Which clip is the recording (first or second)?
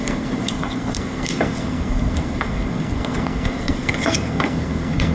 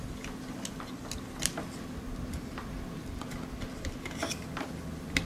second